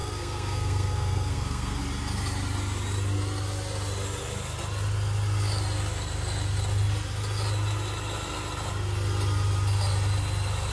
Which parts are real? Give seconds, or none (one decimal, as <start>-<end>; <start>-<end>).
1.8-10.7